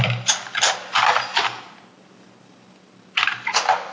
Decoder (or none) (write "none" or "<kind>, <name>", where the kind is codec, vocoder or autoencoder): none